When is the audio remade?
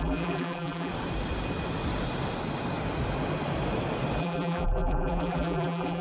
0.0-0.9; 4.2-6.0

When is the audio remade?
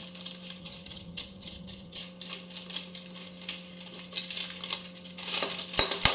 0.6-2.0